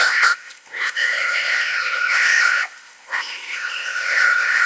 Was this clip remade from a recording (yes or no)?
yes